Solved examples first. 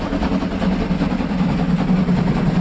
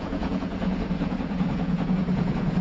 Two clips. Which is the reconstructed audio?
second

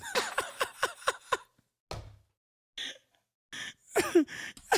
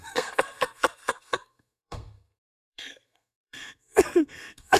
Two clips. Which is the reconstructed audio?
second